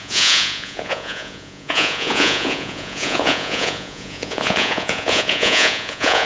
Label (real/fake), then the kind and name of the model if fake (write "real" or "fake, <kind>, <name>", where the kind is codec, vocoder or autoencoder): fake, vocoder, Vocos